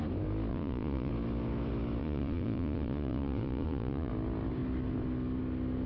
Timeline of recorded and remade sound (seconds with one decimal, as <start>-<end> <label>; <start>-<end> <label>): 0.0-0.5 recorded; 0.5-1.1 remade; 1.1-2.0 recorded; 2.0-4.1 remade; 4.1-5.9 recorded